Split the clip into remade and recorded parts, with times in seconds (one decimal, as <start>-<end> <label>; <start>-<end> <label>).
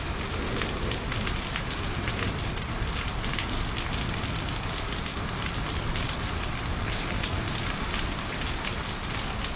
0.0-6.7 recorded; 6.7-7.5 remade; 7.5-9.6 recorded